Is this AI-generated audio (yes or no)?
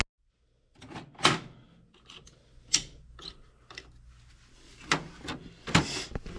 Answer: no